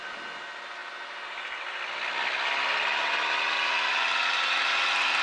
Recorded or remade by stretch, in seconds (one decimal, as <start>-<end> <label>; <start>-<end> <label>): 0.0-5.2 recorded